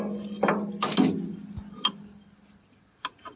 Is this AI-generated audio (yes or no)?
no